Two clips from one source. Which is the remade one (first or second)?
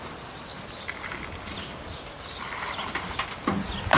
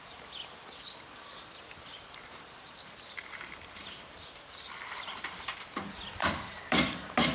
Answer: second